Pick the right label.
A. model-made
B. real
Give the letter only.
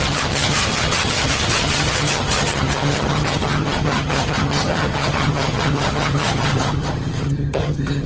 A